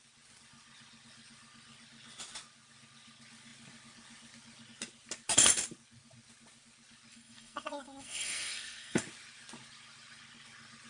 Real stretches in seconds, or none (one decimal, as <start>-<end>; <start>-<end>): 0.0-7.1; 9.0-10.9